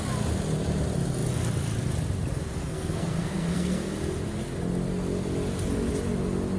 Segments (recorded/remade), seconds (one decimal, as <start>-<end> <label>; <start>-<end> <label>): 0.0-2.6 recorded; 2.6-3.9 remade; 3.9-6.6 recorded